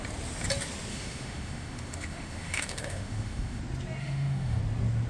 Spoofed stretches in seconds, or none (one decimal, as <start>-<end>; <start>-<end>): 0.9-3.6; 4.0-4.6